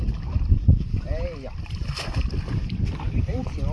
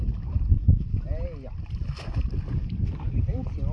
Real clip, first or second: second